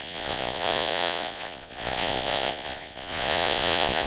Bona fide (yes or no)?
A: no